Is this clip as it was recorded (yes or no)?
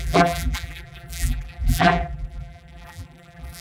no